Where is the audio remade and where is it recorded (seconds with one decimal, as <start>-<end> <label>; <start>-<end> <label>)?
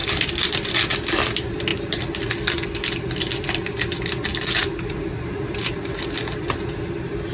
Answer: 0.0-0.7 remade; 0.7-4.3 recorded; 4.3-5.7 remade; 5.7-7.3 recorded